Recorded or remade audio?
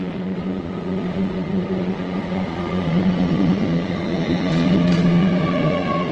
remade